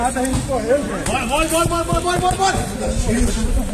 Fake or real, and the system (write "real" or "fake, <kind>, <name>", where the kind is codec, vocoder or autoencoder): real